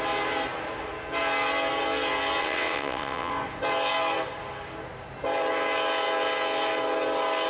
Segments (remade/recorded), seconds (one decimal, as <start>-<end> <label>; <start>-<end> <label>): 0.0-2.4 recorded; 2.4-3.3 remade; 3.3-7.5 recorded